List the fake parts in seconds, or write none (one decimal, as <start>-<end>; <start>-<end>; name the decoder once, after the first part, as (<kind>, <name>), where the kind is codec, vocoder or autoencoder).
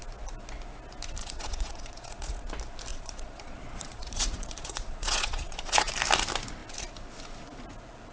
1.2-2.5 (vocoder, Vocos); 2.9-5.9